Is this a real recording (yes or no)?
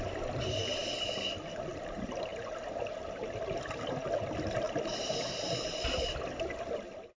yes